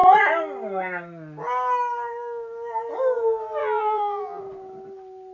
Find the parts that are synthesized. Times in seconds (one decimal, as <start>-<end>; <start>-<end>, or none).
3.6-4.4